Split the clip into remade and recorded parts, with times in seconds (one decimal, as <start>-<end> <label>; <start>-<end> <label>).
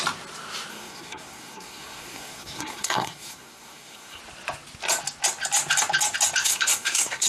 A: 0.0-0.7 recorded; 0.7-4.2 remade; 4.2-6.4 recorded; 6.4-7.3 remade